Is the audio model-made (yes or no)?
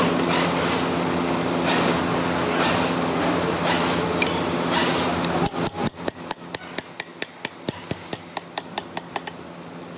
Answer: no